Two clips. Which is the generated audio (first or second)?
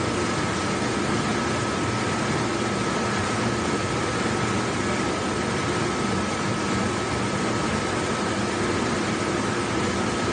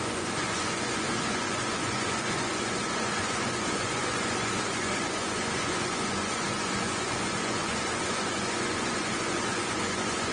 second